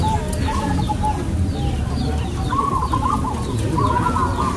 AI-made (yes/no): no